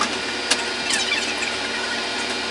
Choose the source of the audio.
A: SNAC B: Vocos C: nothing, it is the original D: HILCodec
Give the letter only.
C